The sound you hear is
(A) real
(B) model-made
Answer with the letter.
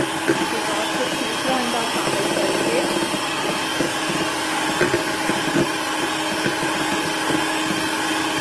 A